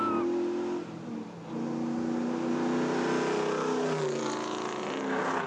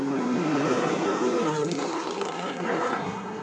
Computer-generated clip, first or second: second